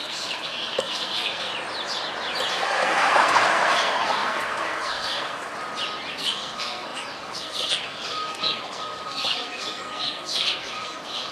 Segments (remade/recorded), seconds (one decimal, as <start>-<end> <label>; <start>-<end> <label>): 0.0-1.5 remade; 1.5-2.5 recorded; 2.5-5.5 remade; 5.5-6.1 recorded; 6.1-11.3 remade